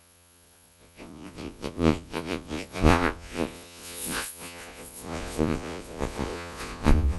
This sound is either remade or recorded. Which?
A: remade